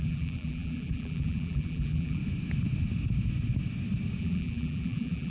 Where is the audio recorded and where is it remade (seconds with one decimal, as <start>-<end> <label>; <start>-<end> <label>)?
0.0-2.2 remade; 2.2-4.2 recorded; 4.2-5.3 remade